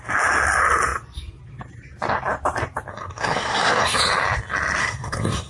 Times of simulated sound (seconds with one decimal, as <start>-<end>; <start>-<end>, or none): 2.9-4.0; 4.8-5.5